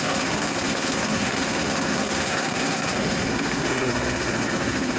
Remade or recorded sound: remade